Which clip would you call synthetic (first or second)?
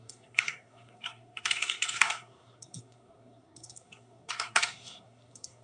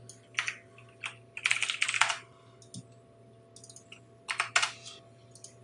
first